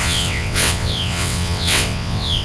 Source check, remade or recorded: remade